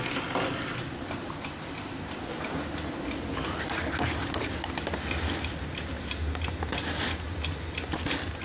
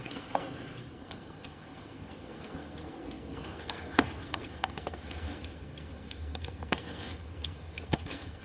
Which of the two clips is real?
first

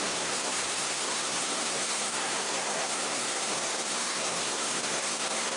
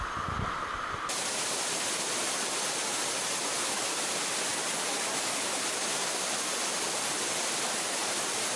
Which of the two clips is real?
second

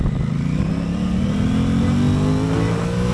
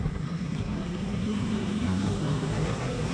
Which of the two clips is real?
first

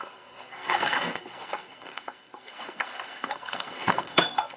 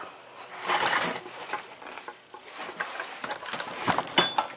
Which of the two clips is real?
second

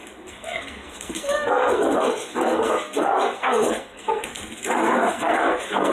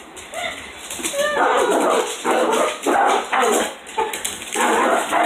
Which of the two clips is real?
second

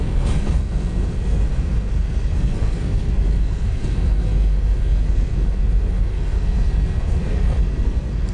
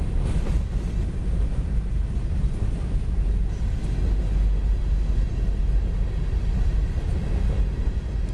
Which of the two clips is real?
second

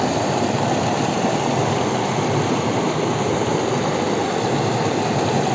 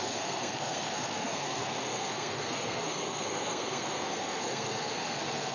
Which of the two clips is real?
first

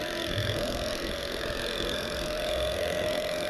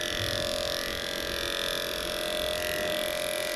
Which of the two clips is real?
second